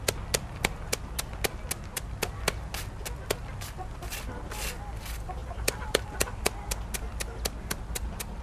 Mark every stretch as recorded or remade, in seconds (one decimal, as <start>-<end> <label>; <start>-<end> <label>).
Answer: 0.0-5.4 recorded; 5.4-6.8 remade; 6.8-8.4 recorded